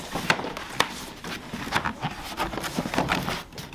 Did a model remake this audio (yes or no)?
no